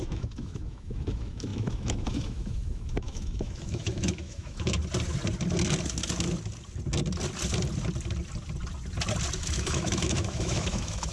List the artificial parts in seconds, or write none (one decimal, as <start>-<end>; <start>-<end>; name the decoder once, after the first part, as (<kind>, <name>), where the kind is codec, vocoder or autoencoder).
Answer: 0.0-4.8 (autoencoder, DAC-VAE); 9.4-11.1